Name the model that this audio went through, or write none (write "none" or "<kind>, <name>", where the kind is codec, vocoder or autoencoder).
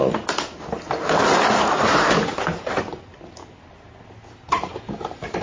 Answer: none